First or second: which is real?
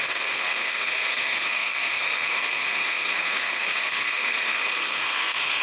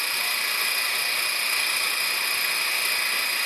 second